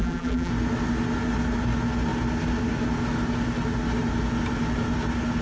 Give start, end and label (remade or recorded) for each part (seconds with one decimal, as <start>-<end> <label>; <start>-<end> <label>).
0.0-0.5 remade; 0.5-5.4 recorded